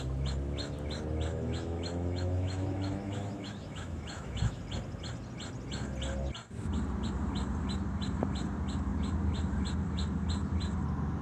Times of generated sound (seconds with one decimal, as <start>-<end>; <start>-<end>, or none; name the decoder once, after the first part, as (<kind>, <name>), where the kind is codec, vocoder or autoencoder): 1.3-4.6 (autoencoder, DAC-VAE)